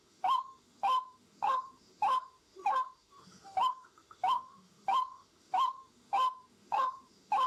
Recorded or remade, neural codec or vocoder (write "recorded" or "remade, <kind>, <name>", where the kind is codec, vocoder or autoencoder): remade, autoencoder, DAC-VAE